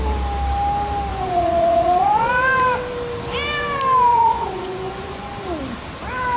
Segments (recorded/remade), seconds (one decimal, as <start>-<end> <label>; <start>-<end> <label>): 0.0-1.1 recorded; 1.1-2.3 remade; 2.3-4.1 recorded; 4.1-5.3 remade; 5.3-6.4 recorded